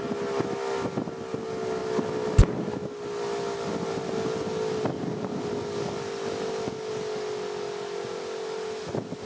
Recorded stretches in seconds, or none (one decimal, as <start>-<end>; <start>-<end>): 0.0-9.3